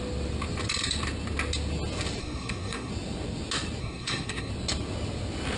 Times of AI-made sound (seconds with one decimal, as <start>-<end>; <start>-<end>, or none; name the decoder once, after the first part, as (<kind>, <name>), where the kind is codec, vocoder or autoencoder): 2.2-2.9 (codec, SNAC); 3.8-4.5